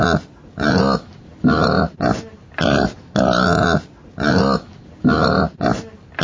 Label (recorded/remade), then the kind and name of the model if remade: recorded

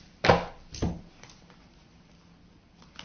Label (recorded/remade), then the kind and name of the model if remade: remade, vocoder, BigVGAN v2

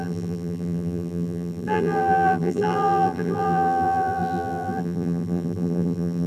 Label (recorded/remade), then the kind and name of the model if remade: remade, vocoder, BigVGAN v2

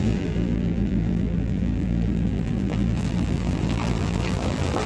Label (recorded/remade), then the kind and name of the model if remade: remade, vocoder, BigVGAN v2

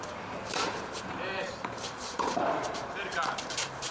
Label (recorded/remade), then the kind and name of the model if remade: remade, vocoder, BigVGAN v2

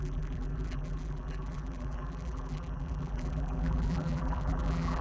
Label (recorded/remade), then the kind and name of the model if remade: remade, vocoder, BigVGAN v2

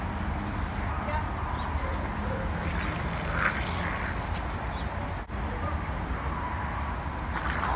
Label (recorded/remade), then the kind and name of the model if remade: recorded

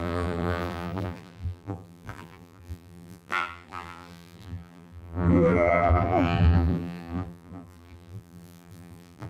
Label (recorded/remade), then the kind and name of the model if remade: remade, vocoder, BigVGAN v2